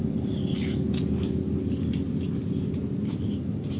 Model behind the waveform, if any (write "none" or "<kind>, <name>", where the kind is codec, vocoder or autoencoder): none